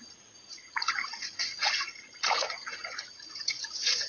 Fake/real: fake